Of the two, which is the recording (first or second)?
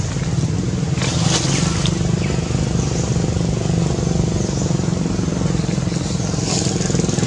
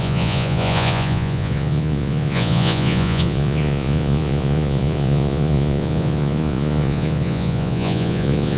first